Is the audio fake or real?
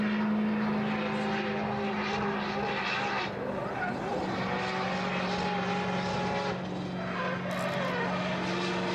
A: real